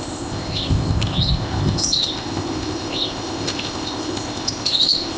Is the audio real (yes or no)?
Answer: no